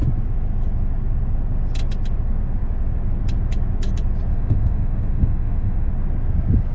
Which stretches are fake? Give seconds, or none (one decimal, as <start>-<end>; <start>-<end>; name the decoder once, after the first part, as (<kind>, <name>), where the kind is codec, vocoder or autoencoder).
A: 4.3-5.9 (autoencoder, DAC-VAE)